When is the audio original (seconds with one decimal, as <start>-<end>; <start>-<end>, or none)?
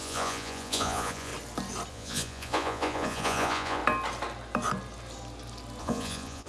1.3-1.9; 3.8-5.8